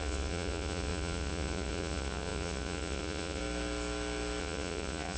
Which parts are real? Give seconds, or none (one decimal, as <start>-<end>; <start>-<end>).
3.4-4.4